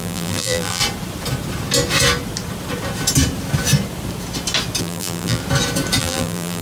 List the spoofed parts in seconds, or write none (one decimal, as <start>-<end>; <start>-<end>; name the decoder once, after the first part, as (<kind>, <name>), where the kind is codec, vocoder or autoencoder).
0.0-0.8 (vocoder, BigVGAN v2); 4.8-5.4; 6.0-6.6